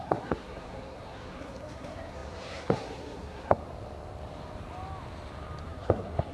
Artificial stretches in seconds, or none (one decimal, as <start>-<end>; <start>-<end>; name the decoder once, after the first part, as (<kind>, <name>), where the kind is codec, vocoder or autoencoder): 0.0-3.6 (codec, SNAC); 5.6-6.3